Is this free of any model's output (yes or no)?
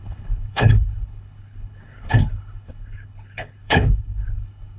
no